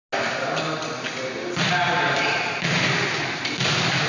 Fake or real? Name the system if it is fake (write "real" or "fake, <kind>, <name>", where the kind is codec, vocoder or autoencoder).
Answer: real